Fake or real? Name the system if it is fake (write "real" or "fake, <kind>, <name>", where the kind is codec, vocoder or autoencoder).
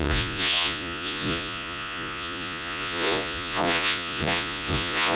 fake, vocoder, Vocos